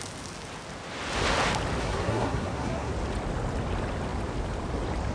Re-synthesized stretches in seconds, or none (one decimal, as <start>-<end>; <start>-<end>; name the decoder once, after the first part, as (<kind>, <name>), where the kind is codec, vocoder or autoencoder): 1.8-2.9 (codec, SNAC)